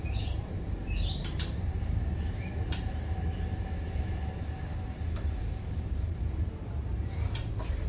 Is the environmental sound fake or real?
fake